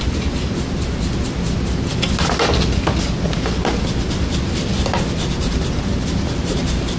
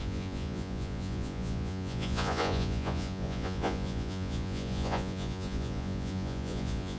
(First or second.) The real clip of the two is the first